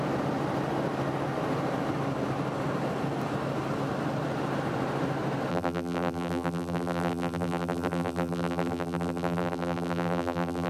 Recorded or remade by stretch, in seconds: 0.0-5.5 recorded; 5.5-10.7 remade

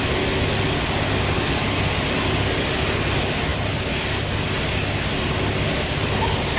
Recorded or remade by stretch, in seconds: 0.0-6.6 recorded

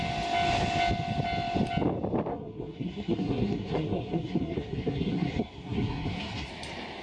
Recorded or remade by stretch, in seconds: 0.0-2.3 recorded; 2.3-6.5 remade; 6.5-7.0 recorded

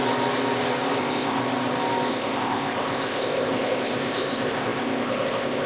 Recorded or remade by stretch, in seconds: 0.0-1.0 recorded; 1.0-1.4 remade; 1.4-2.1 recorded; 2.1-5.7 remade

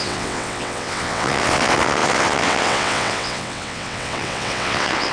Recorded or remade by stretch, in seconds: 0.0-5.1 remade

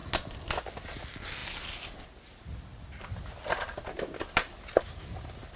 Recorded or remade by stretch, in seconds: 0.0-5.6 recorded